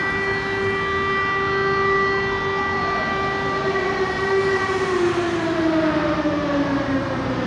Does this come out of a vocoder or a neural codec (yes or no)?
no